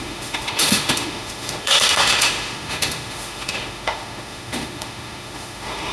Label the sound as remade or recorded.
remade